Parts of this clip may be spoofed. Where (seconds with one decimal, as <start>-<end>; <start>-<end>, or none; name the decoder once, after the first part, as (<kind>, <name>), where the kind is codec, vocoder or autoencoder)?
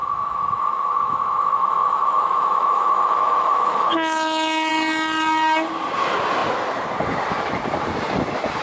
0.0-4.7 (autoencoder, DAC-VAE)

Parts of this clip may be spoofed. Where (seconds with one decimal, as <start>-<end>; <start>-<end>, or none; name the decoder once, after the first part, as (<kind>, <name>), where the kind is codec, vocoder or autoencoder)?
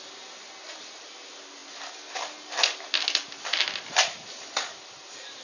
none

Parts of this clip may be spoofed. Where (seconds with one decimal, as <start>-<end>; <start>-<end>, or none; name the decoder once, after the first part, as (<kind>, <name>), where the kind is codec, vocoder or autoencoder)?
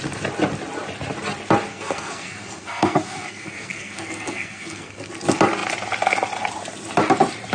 1.7-5.1 (codec, SNAC)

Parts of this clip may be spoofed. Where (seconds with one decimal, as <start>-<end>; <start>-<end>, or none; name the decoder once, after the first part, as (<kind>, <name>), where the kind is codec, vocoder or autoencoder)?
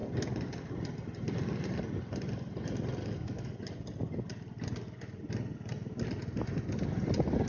3.0-3.6 (codec, DAC)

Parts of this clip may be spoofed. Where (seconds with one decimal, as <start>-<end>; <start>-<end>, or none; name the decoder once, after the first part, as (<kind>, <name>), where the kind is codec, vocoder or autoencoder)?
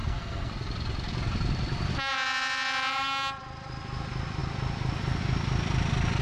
0.0-0.5 (codec, SNAC)